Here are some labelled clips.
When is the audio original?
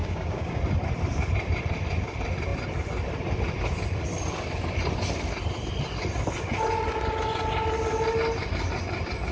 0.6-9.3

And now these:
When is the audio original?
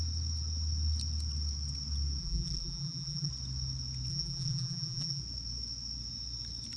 0.0-2.2; 3.3-4.1; 5.2-6.8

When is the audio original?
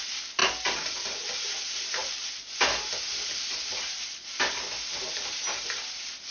0.0-6.3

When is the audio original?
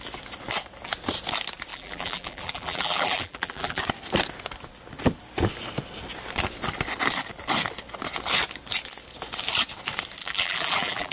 0.0-1.7; 3.8-10.2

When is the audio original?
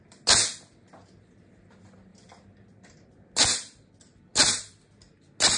0.0-5.6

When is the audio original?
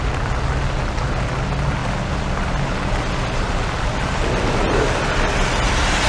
0.0-6.1